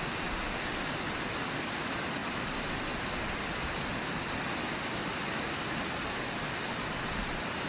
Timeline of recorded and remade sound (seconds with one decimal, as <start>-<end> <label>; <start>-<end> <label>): 0.0-7.7 recorded